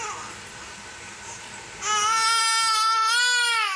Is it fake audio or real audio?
real